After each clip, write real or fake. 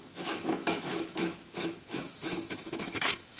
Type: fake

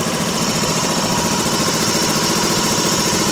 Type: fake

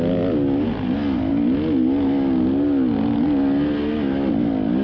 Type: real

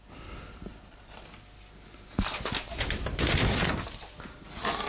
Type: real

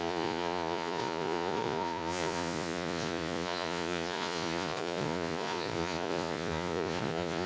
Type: fake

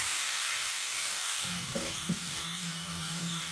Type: fake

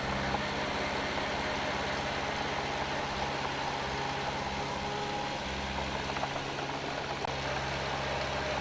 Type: real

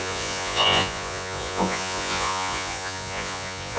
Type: fake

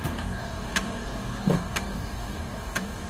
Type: fake